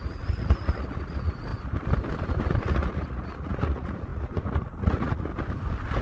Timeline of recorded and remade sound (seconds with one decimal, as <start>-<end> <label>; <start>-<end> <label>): 0.0-1.5 remade; 1.5-2.6 recorded; 2.6-5.3 remade; 5.3-6.0 recorded